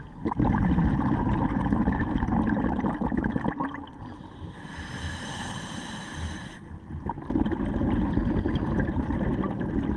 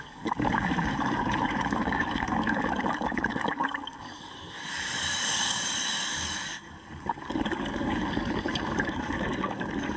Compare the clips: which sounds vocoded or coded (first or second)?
second